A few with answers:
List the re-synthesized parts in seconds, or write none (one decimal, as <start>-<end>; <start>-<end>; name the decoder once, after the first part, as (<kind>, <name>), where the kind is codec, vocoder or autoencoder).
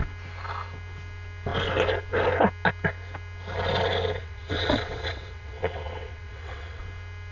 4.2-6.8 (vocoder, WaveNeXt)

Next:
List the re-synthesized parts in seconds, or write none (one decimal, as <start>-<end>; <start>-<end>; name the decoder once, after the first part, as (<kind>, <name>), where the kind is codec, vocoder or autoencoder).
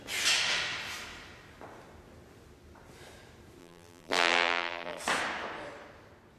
3.6-5.0 (vocoder, BigVGAN v2)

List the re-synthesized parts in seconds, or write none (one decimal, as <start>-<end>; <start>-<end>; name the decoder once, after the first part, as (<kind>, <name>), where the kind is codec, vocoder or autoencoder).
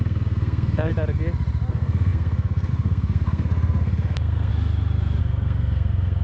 0.0-0.9 (codec, SNAC); 1.7-4.5; 5.2-6.2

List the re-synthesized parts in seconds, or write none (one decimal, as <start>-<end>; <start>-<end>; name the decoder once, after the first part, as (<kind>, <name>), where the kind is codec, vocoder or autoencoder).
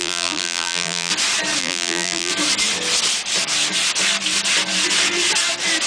0.0-1.1 (vocoder, BigVGAN v2); 1.6-2.3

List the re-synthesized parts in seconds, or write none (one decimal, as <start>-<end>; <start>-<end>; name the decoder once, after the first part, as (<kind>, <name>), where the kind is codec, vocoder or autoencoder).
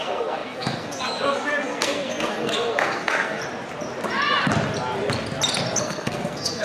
0.0-3.4 (codec, SNAC); 5.8-6.6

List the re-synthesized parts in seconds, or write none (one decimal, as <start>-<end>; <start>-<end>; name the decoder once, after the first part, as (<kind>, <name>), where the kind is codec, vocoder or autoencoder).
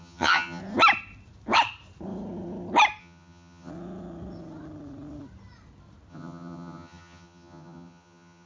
0.0-0.6 (vocoder, HiFi-GAN); 3.0-3.7; 6.1-8.5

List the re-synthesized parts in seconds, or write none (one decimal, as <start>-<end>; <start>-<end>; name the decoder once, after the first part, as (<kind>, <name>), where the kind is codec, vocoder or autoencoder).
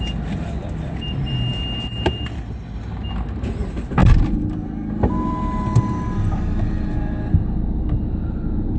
none